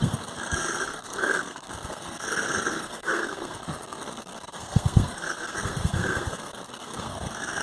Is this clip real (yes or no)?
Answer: no